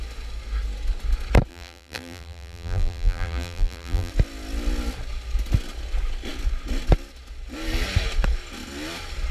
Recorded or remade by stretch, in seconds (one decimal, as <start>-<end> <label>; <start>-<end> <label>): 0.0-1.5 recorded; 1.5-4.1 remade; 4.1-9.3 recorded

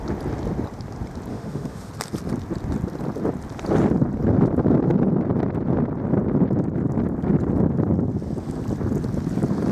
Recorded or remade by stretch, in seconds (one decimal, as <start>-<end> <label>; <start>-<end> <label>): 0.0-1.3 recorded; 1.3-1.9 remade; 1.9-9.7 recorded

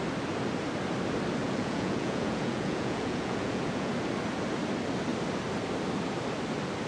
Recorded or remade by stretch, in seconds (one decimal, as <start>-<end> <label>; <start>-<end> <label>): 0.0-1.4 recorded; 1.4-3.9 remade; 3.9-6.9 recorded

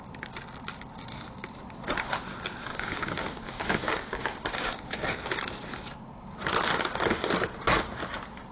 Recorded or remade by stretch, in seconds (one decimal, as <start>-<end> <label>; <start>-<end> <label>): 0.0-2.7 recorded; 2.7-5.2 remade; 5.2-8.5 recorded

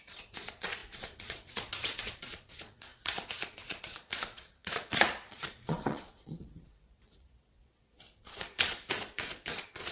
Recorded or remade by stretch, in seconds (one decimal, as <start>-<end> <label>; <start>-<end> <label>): 0.0-9.9 remade

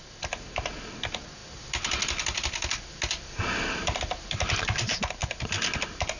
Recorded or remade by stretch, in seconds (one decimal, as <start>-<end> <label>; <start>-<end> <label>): 0.0-6.2 recorded

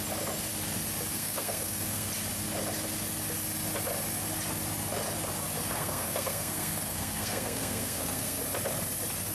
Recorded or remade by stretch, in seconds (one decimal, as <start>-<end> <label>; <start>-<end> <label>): 0.0-1.1 recorded; 1.1-2.1 remade; 2.1-5.7 recorded; 5.7-8.4 remade; 8.4-9.3 recorded